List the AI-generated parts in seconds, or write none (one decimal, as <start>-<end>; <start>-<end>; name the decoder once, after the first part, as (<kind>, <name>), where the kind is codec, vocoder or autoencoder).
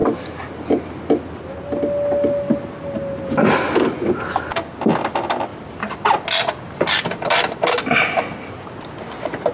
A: none